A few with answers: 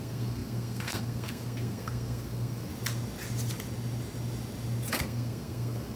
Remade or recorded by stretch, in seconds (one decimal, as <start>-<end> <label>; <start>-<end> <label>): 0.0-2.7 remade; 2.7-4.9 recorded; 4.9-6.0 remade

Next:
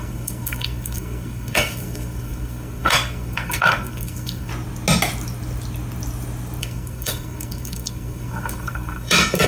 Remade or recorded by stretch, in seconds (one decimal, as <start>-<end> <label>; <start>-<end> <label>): 0.0-4.5 remade; 4.5-6.6 recorded; 6.6-9.5 remade

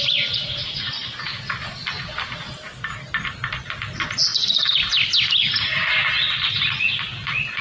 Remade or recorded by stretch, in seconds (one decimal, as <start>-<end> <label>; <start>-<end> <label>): 0.0-7.6 recorded